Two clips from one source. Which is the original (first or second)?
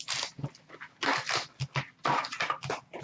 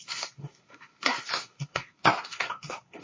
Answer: first